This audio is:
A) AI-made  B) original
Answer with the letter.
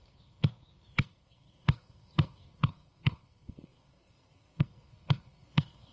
A